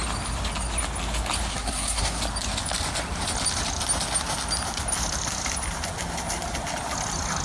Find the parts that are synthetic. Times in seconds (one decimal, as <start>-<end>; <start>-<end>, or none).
1.5-2.2